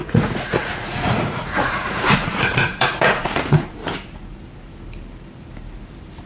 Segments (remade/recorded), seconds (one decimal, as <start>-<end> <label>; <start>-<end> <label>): 0.0-3.8 remade; 3.8-6.3 recorded